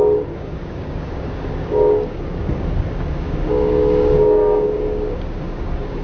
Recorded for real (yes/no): no